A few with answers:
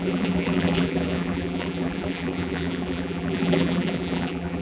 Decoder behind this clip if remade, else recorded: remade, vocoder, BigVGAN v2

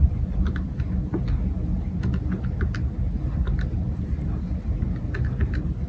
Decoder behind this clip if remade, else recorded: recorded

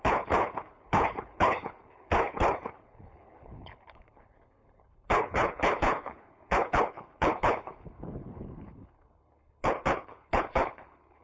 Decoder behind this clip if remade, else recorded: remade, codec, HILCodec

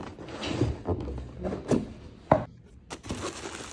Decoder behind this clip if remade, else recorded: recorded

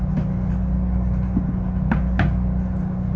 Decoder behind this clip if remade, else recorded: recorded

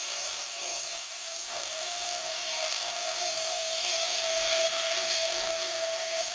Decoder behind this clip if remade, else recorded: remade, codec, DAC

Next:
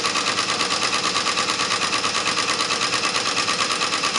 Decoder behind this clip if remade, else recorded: recorded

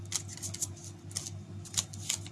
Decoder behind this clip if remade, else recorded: recorded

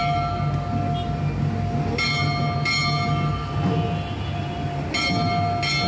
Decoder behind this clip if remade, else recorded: recorded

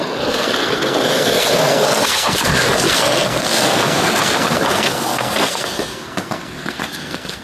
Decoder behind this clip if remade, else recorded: remade, codec, SNAC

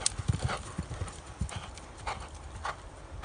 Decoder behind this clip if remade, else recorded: recorded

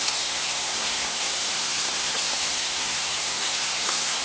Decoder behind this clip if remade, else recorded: remade, codec, SNAC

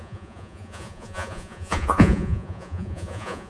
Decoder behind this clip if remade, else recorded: remade, vocoder, Vocos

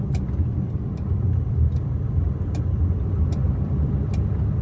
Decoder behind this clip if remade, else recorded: remade, vocoder, BigVGAN v2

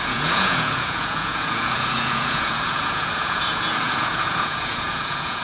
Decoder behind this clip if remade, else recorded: remade, vocoder, Vocos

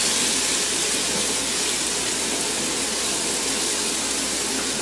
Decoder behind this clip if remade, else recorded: remade, vocoder, BigVGAN v2